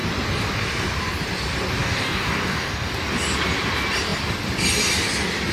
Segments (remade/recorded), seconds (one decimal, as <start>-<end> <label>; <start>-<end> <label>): 0.0-1.8 recorded; 1.8-2.9 remade; 2.9-5.5 recorded